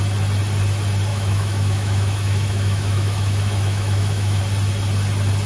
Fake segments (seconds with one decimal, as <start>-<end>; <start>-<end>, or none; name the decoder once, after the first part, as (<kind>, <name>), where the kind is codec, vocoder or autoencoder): 1.1-4.4 (autoencoder, DAC-VAE)